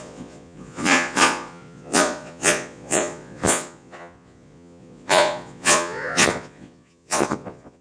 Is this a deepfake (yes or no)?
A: yes